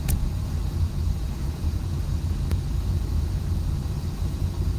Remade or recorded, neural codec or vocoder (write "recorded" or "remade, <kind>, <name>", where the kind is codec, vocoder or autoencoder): remade, vocoder, Vocos